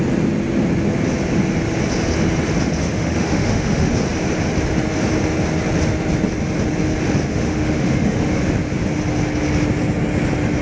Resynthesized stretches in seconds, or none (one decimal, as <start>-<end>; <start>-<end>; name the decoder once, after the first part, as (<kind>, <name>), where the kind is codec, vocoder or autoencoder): 2.8-3.9 (autoencoder, DAC-VAE); 7.3-8.4